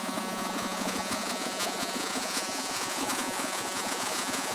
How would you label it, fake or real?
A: fake